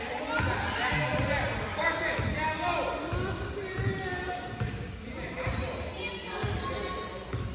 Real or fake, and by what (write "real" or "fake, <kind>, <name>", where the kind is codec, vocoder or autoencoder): real